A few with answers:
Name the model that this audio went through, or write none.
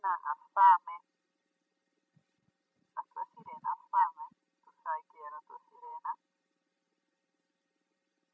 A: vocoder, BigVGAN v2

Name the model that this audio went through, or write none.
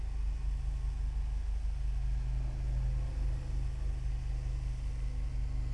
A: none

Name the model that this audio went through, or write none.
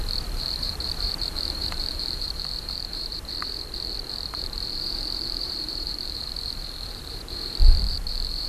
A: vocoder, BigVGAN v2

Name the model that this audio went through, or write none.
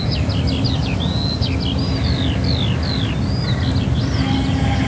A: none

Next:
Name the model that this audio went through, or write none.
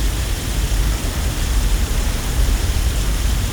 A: vocoder, BigVGAN v2